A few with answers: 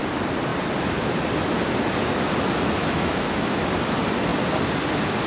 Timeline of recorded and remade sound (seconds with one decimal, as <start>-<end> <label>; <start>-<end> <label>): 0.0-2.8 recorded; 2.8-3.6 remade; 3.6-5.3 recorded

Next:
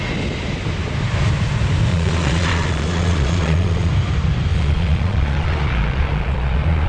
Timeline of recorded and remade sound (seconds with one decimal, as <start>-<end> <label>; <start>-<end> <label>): 0.0-1.9 recorded; 1.9-3.9 remade; 3.9-4.5 recorded; 4.5-6.9 remade

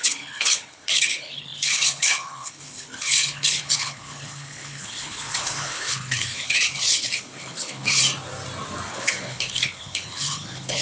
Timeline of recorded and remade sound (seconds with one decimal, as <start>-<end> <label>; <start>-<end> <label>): 0.0-8.0 remade; 8.0-8.9 recorded; 8.9-10.8 remade

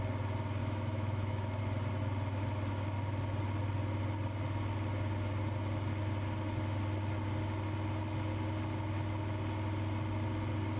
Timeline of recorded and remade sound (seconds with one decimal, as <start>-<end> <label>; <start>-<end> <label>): 0.0-0.6 recorded; 0.6-1.6 remade; 1.6-10.8 recorded